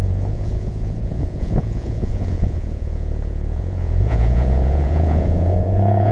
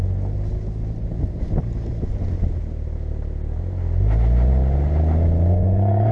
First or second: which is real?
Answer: second